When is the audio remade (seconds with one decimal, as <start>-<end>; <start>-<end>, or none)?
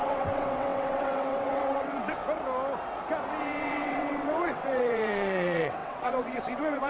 0.0-2.2; 3.4-6.9